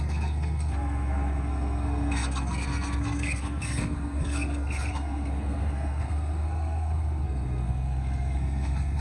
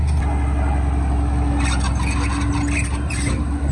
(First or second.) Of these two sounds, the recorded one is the second